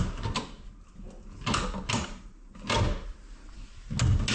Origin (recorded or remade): recorded